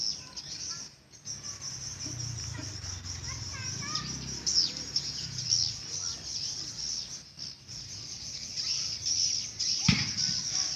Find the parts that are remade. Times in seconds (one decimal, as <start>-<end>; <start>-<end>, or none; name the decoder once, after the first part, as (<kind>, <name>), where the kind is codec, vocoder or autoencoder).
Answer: none